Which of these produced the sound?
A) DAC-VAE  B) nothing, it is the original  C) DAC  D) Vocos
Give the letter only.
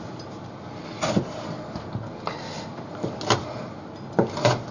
B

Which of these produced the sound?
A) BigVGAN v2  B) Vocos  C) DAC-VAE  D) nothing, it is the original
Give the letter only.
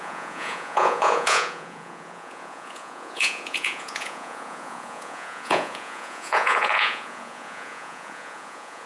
B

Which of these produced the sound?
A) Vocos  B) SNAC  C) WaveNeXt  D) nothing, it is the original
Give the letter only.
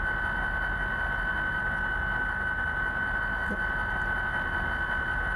D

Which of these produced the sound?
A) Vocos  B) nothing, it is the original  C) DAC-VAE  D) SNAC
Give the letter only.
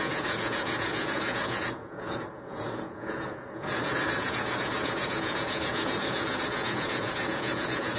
A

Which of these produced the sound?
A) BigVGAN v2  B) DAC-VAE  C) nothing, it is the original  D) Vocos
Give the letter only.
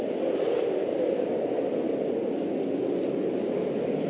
C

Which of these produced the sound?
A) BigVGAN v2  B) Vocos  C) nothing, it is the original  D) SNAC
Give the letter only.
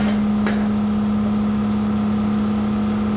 C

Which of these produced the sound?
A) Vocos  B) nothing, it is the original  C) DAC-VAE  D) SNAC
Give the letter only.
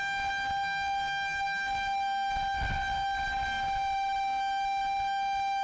B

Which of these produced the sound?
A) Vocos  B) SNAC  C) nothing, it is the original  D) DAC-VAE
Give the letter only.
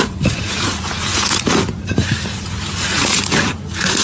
A